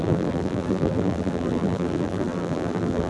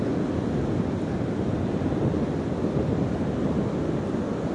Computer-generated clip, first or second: first